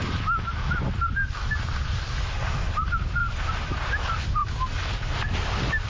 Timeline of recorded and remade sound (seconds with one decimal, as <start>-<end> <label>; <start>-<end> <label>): 0.0-5.9 recorded